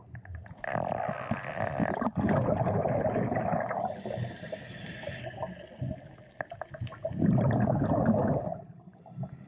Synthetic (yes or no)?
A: no